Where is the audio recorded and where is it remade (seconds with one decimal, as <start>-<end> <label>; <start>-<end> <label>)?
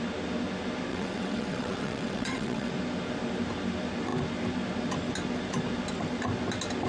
0.0-0.9 recorded; 0.9-2.7 remade; 2.7-6.9 recorded